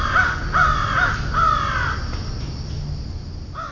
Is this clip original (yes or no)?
yes